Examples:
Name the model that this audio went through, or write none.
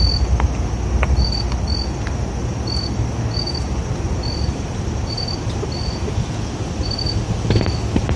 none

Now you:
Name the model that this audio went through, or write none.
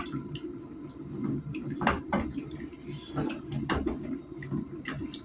none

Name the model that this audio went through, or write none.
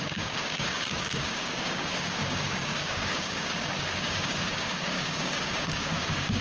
codec, DAC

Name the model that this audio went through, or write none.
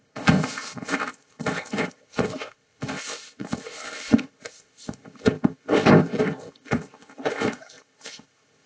codec, ZipCodec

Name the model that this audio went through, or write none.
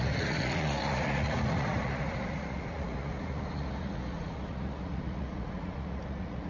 vocoder, Vocos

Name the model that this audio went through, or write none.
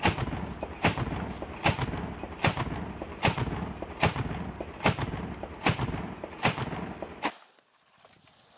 none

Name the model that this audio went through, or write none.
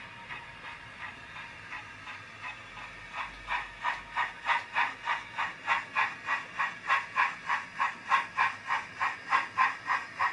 none